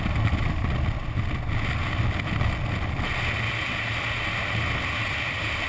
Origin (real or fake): real